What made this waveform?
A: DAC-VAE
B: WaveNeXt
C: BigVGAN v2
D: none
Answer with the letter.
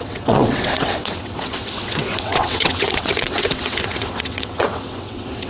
B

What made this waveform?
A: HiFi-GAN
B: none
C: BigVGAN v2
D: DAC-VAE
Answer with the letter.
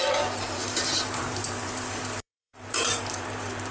C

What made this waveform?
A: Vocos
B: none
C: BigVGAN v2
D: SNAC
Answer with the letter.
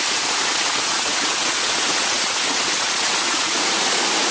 A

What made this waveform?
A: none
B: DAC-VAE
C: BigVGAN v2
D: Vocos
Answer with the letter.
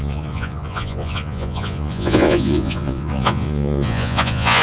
D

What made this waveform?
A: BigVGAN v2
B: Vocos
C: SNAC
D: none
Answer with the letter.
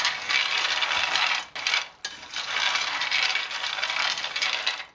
D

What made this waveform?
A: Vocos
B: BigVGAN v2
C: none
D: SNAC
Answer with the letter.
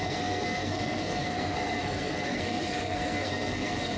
D